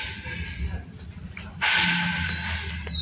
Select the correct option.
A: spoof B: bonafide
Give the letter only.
B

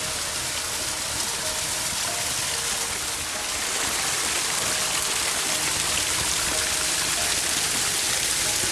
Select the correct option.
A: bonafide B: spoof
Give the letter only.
A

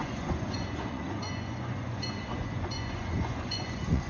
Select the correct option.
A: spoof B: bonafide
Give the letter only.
A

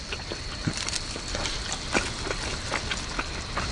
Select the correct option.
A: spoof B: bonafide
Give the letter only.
B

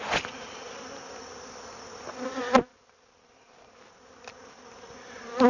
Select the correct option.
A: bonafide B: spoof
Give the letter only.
A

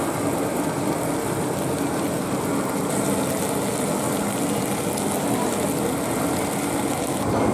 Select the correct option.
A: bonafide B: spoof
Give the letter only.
A